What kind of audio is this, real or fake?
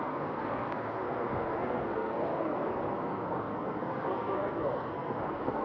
fake